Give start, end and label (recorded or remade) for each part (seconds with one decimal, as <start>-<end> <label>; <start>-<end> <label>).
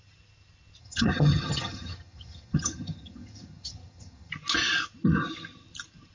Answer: 0.0-0.8 recorded; 0.8-4.3 remade; 4.3-6.1 recorded